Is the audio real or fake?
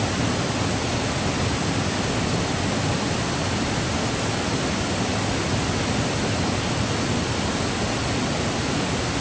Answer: real